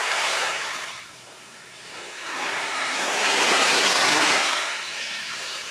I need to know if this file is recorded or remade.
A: remade